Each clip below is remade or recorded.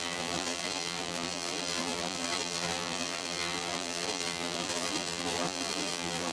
remade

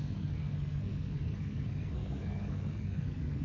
remade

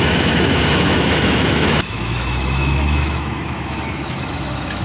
remade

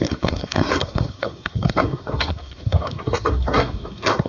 remade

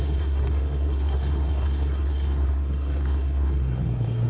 remade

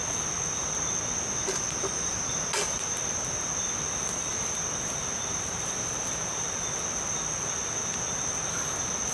recorded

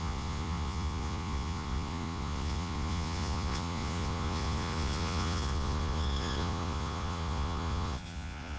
remade